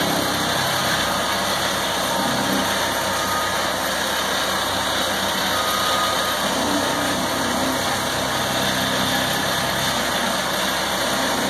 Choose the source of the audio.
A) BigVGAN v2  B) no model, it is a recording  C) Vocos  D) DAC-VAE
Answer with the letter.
B